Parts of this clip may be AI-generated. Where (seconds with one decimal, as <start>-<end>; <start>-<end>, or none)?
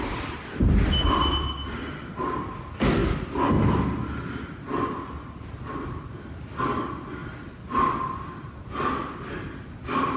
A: none